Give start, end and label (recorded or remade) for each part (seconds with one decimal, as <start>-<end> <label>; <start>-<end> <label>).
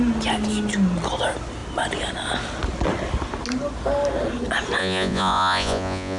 0.0-4.8 recorded; 4.8-6.2 remade